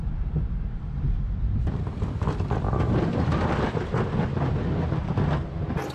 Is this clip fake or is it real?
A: real